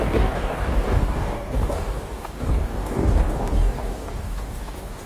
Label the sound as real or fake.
fake